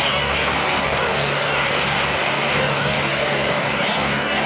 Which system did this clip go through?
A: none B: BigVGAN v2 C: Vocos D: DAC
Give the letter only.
D